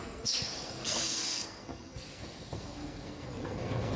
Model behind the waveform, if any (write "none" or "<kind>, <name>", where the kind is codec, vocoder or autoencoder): codec, SNAC